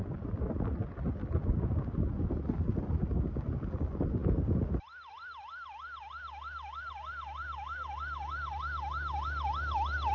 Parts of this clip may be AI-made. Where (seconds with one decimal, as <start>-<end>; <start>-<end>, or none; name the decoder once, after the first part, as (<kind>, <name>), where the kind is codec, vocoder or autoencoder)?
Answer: none